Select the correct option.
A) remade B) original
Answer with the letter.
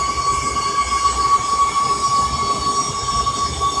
B